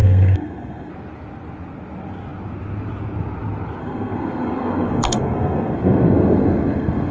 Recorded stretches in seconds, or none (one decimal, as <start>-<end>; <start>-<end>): 0.9-3.8